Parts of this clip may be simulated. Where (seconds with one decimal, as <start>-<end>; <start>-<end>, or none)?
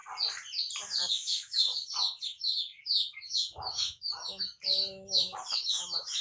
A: 1.1-1.7; 2.2-6.2